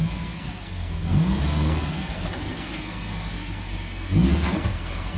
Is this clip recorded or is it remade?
remade